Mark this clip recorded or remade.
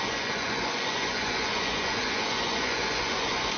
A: remade